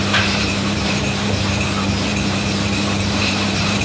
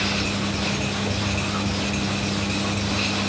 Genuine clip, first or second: second